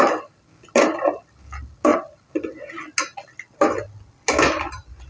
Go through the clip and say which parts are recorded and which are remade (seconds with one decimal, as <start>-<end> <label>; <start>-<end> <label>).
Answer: 0.0-5.1 recorded

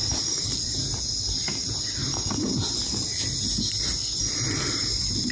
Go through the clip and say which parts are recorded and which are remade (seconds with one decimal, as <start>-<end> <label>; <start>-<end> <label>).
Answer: 0.0-1.0 remade; 1.0-4.2 recorded; 4.2-4.8 remade; 4.8-5.3 recorded

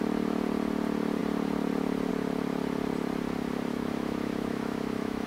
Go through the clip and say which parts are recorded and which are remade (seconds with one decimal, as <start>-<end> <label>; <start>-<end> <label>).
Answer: 0.0-3.7 recorded; 3.7-5.3 remade